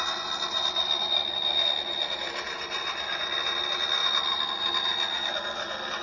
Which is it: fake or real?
real